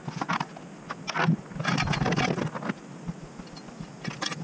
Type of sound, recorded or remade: recorded